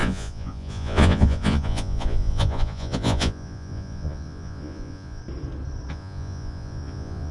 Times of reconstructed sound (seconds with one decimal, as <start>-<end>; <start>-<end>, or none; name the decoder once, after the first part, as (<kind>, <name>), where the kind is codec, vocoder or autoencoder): 0.0-5.2 (vocoder, Vocos); 5.9-7.3